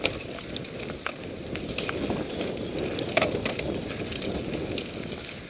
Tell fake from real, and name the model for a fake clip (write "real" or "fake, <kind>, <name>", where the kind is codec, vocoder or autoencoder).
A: real